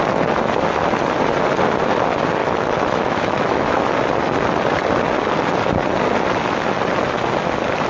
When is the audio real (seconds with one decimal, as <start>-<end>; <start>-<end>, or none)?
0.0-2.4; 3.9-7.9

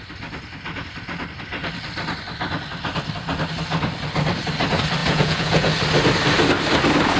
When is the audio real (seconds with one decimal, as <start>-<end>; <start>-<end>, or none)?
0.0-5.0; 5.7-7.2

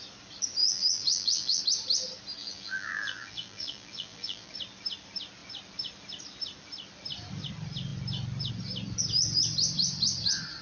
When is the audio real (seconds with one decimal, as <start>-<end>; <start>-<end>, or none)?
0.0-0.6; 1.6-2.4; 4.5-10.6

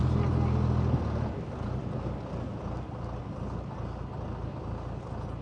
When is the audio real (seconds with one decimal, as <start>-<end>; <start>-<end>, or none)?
0.0-5.4

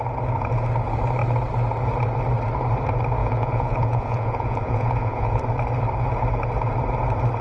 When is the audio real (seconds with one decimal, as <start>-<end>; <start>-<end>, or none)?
0.0-3.2; 5.4-7.4

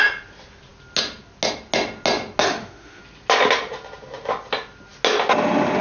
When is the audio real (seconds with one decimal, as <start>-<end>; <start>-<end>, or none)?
0.0-2.4; 3.0-5.8

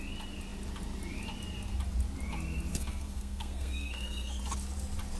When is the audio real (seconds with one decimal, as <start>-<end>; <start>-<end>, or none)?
0.0-2.7; 4.4-5.2